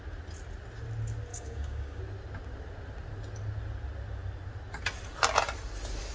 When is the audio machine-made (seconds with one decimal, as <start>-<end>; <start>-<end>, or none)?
1.3-2.0